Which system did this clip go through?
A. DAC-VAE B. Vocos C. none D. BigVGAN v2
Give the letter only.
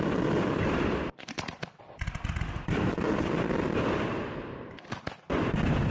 D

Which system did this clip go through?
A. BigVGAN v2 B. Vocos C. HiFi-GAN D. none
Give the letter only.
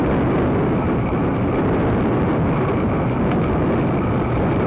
D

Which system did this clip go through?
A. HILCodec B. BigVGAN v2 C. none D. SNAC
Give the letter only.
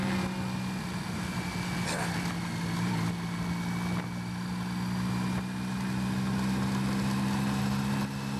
C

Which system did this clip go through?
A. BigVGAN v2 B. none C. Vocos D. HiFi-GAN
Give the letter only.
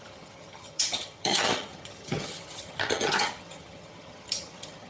D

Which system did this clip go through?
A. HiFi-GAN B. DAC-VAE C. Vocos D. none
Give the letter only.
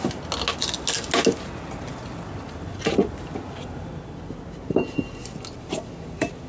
D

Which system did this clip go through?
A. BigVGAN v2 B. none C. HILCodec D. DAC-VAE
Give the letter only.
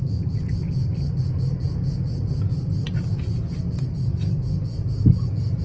B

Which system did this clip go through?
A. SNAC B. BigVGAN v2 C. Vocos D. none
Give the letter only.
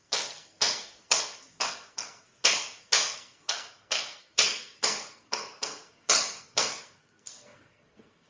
A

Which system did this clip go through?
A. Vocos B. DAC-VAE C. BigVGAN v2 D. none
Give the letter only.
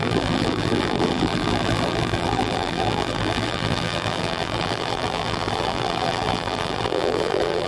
C